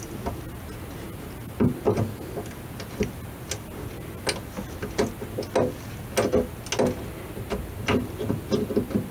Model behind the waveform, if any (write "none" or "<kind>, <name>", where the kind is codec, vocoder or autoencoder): none